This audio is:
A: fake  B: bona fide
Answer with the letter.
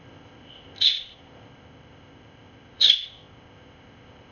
A